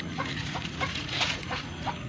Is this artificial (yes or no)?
yes